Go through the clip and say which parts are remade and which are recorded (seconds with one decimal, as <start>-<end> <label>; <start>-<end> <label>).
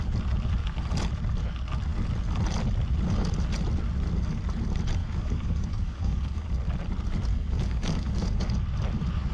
0.0-5.0 recorded; 5.0-6.5 remade; 6.5-7.3 recorded; 7.3-8.5 remade; 8.5-9.3 recorded